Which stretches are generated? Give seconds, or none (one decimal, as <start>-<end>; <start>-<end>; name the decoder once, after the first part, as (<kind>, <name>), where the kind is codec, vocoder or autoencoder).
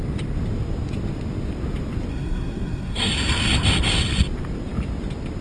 2.1-3.1 (codec, SNAC)